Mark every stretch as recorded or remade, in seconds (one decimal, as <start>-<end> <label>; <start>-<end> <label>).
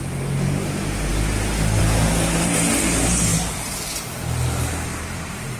0.0-3.3 recorded; 3.3-3.9 remade; 3.9-4.9 recorded; 4.9-5.6 remade